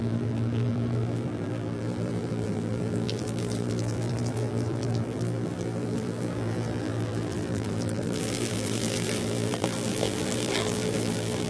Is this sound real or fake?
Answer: fake